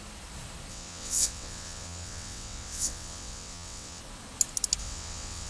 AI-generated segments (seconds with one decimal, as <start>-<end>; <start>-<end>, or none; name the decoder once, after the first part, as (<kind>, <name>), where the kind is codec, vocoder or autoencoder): 0.7-4.0 (vocoder, WaveNeXt); 4.8-5.5